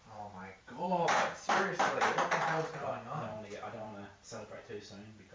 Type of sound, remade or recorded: remade